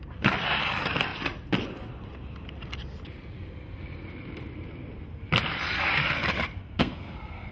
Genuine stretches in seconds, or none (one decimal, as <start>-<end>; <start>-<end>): 0.0-6.6